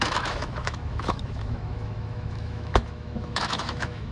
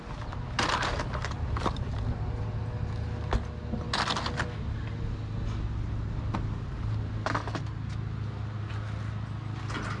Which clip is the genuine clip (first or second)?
second